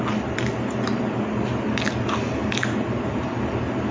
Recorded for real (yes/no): yes